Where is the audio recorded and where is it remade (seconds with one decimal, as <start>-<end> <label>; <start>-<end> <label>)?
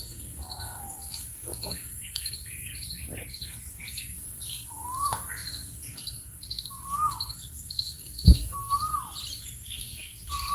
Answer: 0.0-2.7 remade; 2.7-3.3 recorded; 3.3-8.9 remade; 8.9-9.4 recorded; 9.4-10.5 remade